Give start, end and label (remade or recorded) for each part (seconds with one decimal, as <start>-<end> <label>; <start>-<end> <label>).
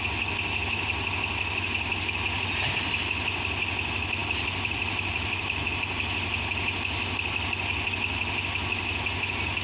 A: 0.0-4.2 recorded; 4.2-5.7 remade; 5.7-9.6 recorded